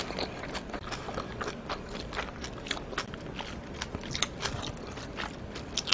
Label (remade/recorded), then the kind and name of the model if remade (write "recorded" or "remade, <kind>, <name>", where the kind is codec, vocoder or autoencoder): recorded